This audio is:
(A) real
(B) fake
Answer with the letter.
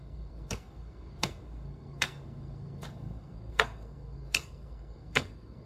B